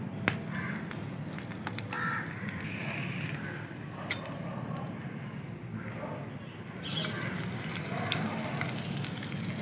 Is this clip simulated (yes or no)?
no